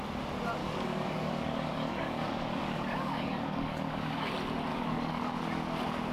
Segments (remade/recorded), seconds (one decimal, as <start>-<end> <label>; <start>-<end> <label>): 0.0-0.6 recorded; 0.6-4.3 remade; 4.3-4.7 recorded; 4.7-5.4 remade; 5.4-6.1 recorded